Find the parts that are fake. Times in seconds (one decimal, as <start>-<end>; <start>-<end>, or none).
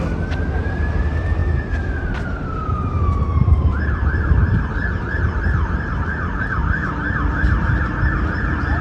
1.4-6.4